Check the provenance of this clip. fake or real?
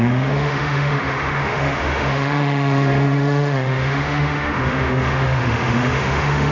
fake